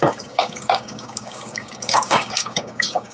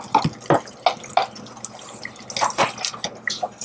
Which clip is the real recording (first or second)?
second